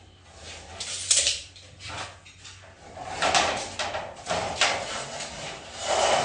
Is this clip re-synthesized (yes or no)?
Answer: no